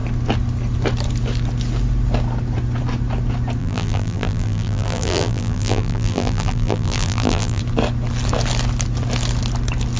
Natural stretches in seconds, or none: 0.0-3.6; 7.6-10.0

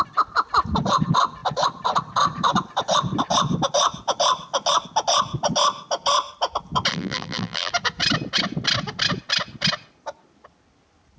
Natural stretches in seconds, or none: 0.0-6.9; 7.7-11.2